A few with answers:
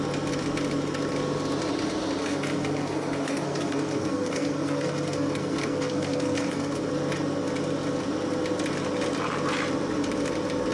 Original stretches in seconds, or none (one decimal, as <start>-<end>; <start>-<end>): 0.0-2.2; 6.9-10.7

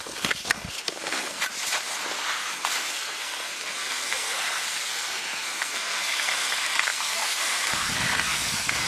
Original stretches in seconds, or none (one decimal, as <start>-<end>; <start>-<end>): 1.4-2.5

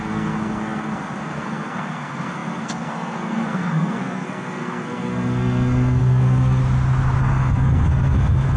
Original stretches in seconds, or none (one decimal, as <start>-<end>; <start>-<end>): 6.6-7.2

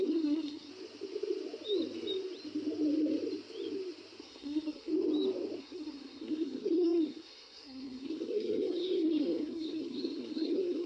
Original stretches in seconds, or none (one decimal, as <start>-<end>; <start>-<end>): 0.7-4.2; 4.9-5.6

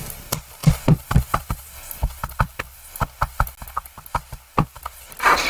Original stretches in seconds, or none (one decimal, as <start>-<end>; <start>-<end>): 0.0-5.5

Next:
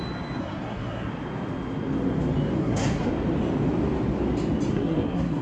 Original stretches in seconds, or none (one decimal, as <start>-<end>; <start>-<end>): 0.0-0.4; 1.1-2.6; 3.1-4.7